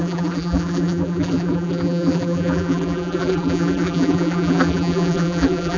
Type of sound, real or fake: fake